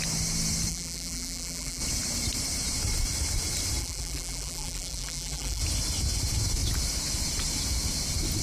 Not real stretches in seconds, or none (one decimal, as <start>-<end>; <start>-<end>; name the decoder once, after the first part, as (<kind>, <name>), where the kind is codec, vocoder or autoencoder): 0.7-1.8 (vocoder, BigVGAN v2); 3.8-5.6